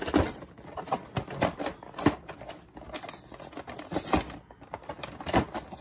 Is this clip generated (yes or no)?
no